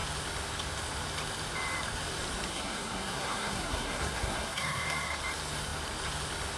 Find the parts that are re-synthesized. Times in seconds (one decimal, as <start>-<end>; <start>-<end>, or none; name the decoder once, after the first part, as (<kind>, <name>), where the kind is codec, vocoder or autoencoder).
2.5-5.2 (codec, SNAC)